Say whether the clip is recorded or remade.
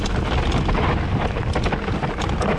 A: recorded